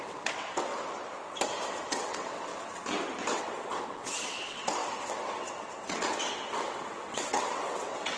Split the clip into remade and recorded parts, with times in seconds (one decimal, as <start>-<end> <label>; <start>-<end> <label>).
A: 0.0-0.7 remade; 0.7-1.8 recorded; 1.8-2.5 remade; 2.5-3.4 recorded; 3.4-8.2 remade